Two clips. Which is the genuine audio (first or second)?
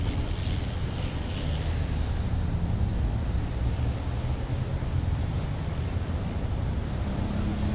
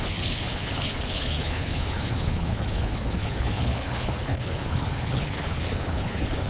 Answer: first